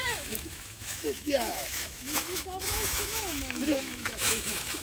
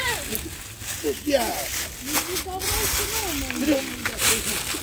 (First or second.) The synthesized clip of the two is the first